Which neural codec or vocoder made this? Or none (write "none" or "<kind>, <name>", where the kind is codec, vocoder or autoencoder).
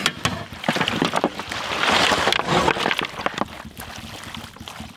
none